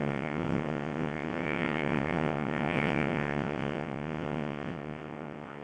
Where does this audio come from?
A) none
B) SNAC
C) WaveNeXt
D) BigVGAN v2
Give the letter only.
C